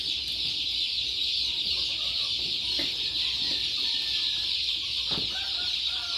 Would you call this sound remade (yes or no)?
yes